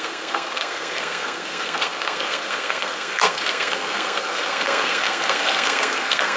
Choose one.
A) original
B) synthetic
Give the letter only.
B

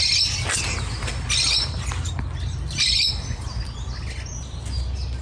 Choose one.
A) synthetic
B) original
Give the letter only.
B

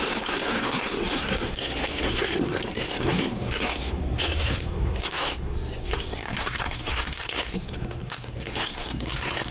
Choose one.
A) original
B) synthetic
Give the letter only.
B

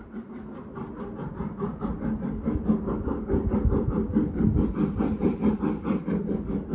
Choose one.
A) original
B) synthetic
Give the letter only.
A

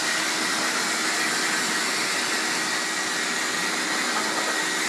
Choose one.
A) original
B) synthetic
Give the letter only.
A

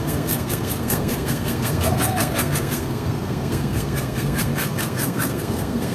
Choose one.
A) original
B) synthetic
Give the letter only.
B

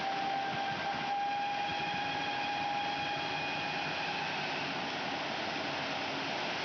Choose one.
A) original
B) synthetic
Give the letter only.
A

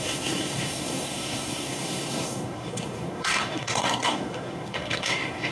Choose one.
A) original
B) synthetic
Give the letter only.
B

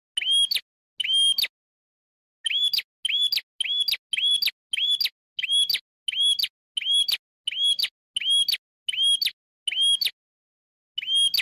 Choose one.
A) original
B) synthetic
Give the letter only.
A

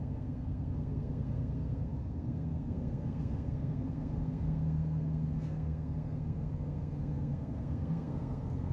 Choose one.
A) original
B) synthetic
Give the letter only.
B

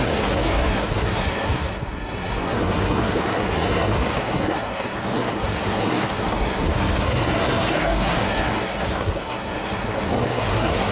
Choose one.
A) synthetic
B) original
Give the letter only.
A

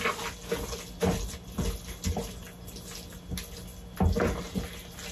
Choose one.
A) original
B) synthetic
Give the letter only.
A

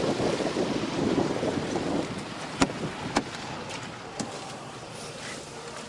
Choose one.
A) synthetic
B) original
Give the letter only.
B